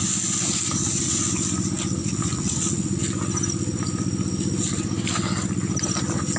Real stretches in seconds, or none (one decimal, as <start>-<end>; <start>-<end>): 0.0-2.0; 3.0-6.4